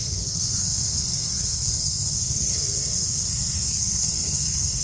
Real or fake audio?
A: fake